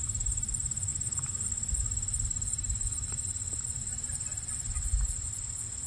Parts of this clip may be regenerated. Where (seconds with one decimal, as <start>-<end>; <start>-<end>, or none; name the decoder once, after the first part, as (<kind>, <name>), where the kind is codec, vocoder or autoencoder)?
none